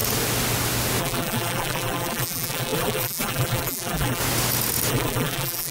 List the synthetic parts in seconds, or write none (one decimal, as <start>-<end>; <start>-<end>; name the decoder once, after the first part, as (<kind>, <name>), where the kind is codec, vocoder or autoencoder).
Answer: 1.0-4.2 (vocoder, BigVGAN v2); 4.9-5.7